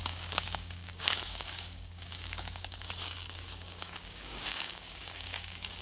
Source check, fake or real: fake